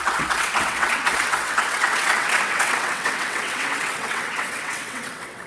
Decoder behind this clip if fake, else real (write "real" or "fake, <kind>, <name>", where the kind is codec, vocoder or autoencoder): fake, vocoder, WaveNeXt